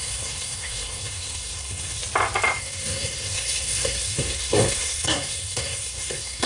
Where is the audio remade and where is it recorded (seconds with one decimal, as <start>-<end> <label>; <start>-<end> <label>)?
0.0-2.0 remade; 2.0-2.6 recorded; 2.6-6.5 remade